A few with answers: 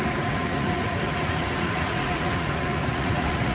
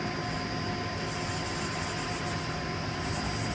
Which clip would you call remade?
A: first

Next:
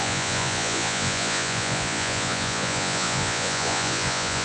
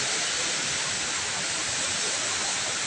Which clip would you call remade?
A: first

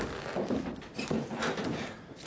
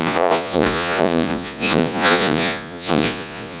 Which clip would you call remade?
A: second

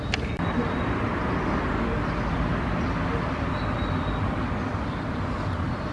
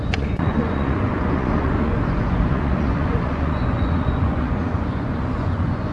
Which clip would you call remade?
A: second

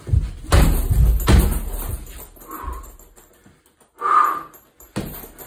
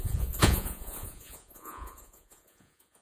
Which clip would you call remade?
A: second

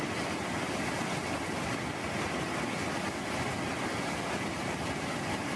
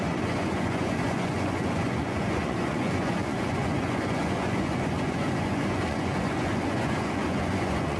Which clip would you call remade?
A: second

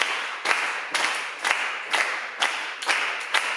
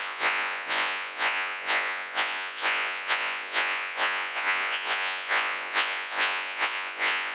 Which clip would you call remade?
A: second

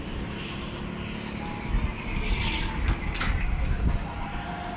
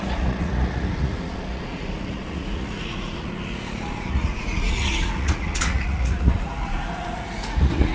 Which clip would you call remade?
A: second